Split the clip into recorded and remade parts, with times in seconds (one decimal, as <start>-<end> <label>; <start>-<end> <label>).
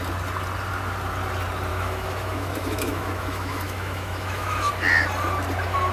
0.0-1.7 recorded; 1.7-4.7 remade; 4.7-5.9 recorded